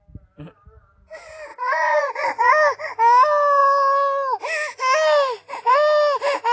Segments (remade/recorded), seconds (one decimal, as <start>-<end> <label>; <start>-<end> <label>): 0.0-1.5 recorded; 1.5-2.5 remade; 2.5-6.5 recorded